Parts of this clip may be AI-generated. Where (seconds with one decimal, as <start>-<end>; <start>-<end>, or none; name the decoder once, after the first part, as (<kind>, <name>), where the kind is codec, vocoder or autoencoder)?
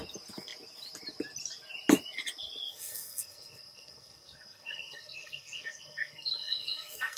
2.7-7.2 (codec, SNAC)